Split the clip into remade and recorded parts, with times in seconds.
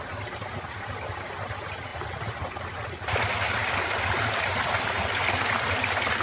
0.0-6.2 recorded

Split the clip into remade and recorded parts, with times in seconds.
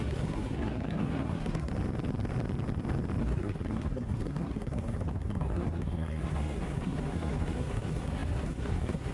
0.0-1.7 remade; 1.7-3.2 recorded; 3.2-9.1 remade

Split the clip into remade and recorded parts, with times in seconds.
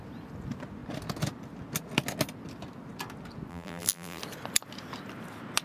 0.0-3.5 recorded; 3.5-4.2 remade; 4.2-5.6 recorded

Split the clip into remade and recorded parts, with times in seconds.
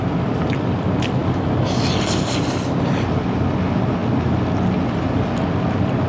0.0-6.1 recorded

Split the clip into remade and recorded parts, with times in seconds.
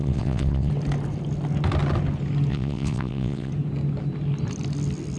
0.0-0.7 remade; 0.7-2.5 recorded; 2.5-3.5 remade; 3.5-5.2 recorded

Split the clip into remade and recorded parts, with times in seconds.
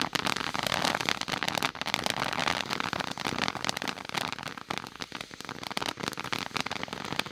0.0-7.3 recorded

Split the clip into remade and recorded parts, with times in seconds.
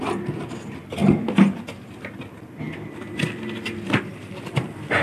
0.0-5.0 recorded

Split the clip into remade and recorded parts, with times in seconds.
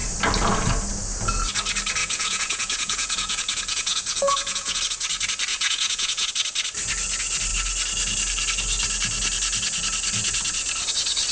0.0-2.0 recorded; 2.0-4.8 remade; 4.8-5.5 recorded; 5.5-6.3 remade; 6.3-11.3 recorded